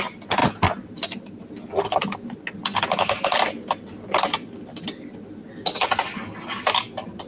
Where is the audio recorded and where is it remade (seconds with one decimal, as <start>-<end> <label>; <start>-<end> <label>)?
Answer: 0.0-7.3 recorded